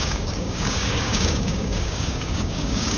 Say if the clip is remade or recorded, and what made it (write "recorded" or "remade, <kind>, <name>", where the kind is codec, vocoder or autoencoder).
remade, codec, DAC